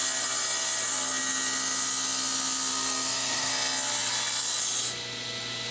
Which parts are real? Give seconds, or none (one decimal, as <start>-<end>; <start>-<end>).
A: 0.0-2.7; 3.5-5.7